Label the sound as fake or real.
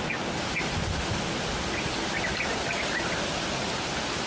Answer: real